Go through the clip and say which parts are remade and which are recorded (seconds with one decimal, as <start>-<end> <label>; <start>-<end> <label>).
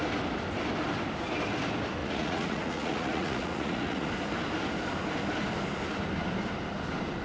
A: 0.0-2.0 recorded; 2.0-4.1 remade; 4.1-7.2 recorded